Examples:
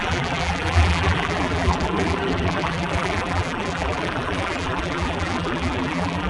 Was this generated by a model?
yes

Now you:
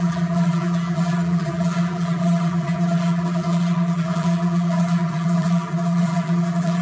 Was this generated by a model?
yes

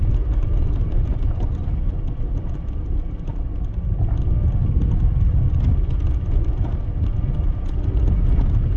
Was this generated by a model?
no